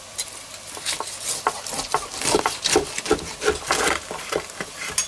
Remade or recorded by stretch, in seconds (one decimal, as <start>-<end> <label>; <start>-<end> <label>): 0.0-0.5 recorded; 0.5-3.3 remade; 3.3-5.1 recorded